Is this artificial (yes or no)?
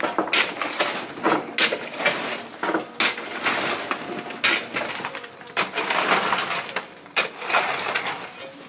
no